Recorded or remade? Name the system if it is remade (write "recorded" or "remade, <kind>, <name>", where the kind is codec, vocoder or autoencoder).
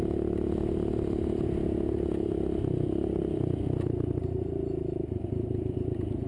recorded